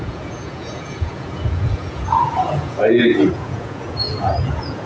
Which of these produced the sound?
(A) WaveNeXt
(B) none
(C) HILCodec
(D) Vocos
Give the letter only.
D